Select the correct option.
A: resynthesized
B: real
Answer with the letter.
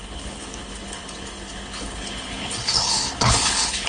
A